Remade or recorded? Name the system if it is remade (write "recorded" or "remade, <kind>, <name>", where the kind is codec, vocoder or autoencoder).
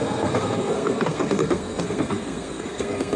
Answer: remade, codec, SNAC